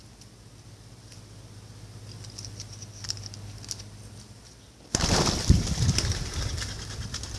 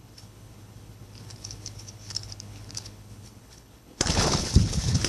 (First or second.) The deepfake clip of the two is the second